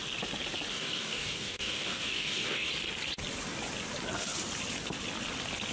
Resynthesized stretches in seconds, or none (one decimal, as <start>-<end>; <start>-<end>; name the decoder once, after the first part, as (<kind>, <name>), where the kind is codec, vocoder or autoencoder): 0.7-2.7 (codec, DAC)